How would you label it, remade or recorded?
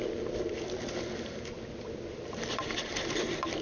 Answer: recorded